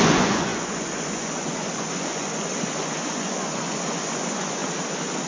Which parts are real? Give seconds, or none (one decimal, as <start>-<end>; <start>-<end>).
4.6-5.3